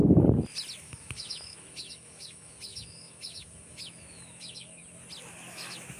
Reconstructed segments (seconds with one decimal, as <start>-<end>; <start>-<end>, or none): 0.8-4.8; 5.5-6.0